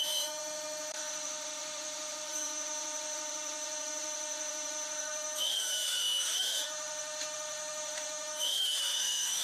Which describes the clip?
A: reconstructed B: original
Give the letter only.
A